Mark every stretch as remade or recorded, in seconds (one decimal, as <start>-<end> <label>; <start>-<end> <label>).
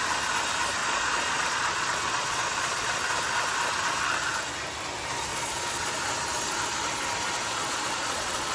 0.0-0.8 recorded; 0.8-3.0 remade; 3.0-5.3 recorded; 5.3-6.1 remade; 6.1-7.5 recorded; 7.5-8.5 remade